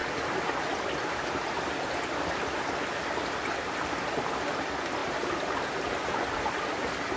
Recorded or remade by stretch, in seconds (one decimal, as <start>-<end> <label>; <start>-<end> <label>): 0.0-7.2 recorded